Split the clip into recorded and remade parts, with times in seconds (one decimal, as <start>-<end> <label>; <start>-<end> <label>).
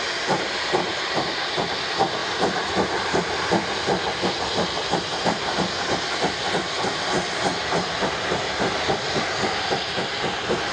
0.0-10.7 recorded